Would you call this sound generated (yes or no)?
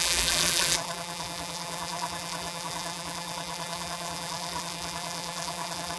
yes